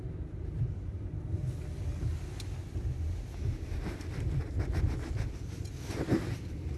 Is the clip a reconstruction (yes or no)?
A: no